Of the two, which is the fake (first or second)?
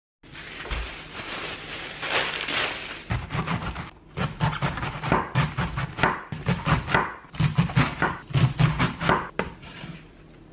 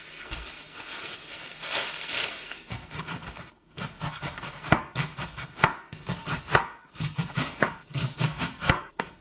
second